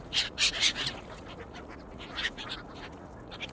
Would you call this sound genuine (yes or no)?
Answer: no